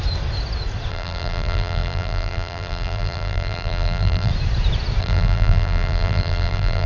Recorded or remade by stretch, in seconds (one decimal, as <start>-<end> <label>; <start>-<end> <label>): 0.0-0.9 recorded; 0.9-4.3 remade; 4.3-5.0 recorded; 5.0-6.9 remade